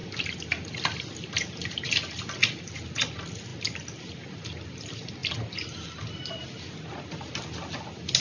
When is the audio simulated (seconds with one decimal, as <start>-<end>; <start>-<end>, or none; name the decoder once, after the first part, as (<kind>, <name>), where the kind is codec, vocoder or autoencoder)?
none